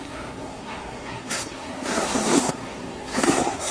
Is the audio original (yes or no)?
no